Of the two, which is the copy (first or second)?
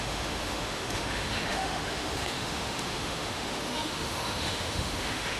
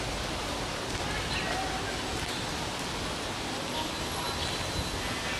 first